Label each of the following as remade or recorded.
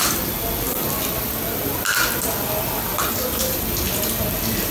recorded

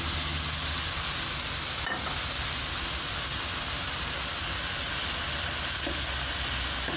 recorded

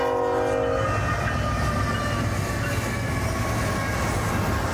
recorded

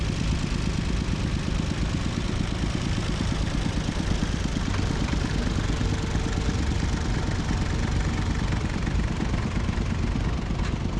remade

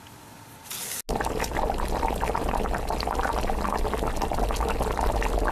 recorded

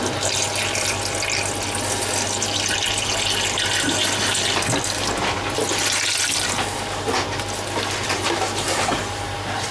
recorded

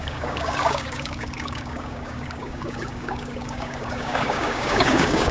remade